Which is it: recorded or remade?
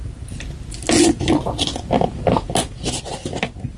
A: recorded